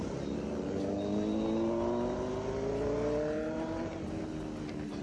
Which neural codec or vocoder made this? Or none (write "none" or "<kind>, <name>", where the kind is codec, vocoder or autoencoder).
none